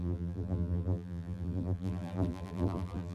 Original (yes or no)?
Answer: no